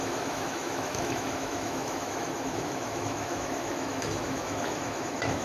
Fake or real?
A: fake